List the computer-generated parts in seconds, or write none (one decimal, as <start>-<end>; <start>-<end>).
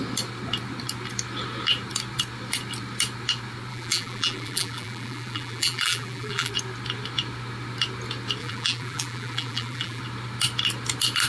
3.7-6.5; 8.4-10.0